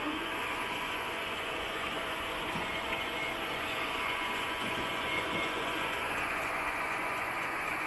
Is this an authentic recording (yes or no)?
no